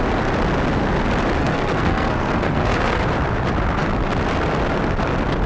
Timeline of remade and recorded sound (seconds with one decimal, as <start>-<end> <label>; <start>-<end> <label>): 0.0-1.4 recorded; 1.4-3.0 remade; 3.0-5.5 recorded